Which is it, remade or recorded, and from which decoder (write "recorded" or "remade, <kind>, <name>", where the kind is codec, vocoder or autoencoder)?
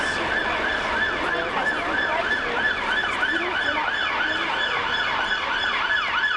recorded